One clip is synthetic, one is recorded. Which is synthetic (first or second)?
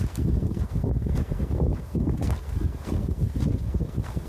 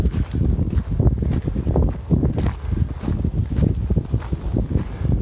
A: first